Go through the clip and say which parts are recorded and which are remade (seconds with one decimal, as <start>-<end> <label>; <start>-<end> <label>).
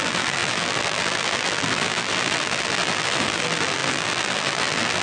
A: 0.0-5.0 remade